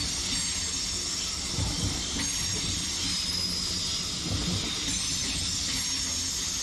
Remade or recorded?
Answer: recorded